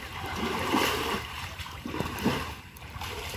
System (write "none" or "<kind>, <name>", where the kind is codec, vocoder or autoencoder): vocoder, BigVGAN v2